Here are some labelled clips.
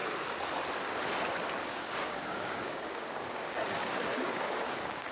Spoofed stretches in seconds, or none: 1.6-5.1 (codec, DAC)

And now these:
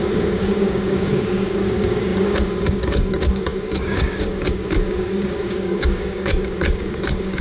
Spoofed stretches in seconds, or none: 0.0-7.4 (codec, DAC)

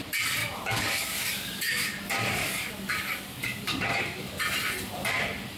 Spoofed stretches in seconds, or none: 0.4-2.0 (codec, DAC); 2.4-4.4

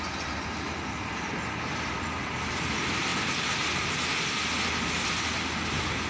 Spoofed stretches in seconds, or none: none

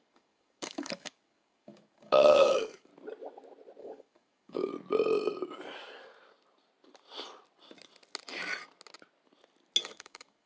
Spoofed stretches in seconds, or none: 0.0-2.9 (codec, DAC); 3.8-4.7; 9.8-10.5